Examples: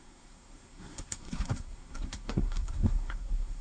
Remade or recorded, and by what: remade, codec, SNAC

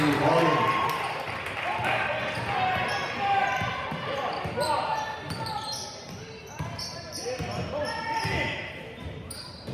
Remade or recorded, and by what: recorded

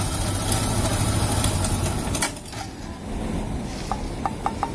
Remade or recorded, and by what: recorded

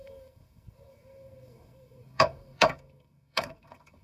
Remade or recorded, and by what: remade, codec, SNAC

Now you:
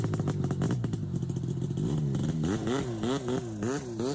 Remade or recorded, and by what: recorded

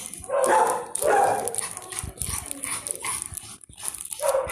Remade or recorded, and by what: recorded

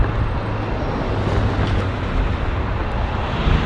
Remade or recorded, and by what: recorded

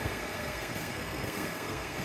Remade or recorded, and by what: remade, codec, SNAC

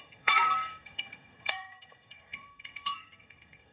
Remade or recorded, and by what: remade, codec, SNAC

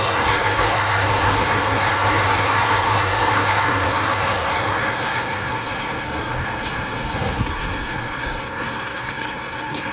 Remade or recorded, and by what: remade, codec, SNAC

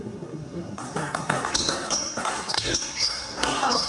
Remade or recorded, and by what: remade, codec, SNAC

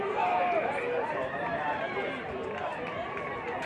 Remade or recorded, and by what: recorded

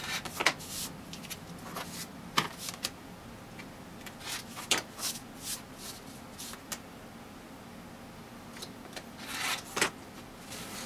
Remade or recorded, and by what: recorded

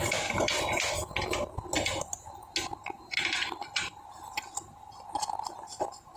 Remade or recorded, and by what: recorded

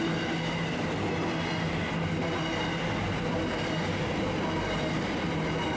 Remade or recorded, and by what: recorded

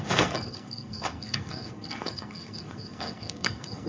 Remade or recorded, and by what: remade, codec, SNAC